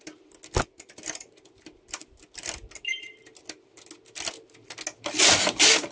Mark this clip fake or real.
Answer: real